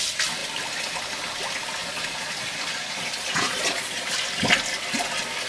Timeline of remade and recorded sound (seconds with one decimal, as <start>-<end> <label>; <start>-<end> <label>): 0.0-1.8 recorded; 1.8-4.1 remade; 4.1-5.5 recorded